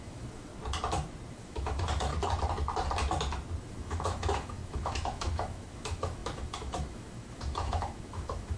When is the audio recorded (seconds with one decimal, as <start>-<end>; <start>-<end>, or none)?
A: 0.5-1.3; 2.1-3.6